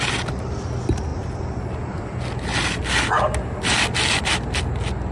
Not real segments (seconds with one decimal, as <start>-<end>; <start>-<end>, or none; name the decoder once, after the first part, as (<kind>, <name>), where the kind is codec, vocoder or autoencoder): none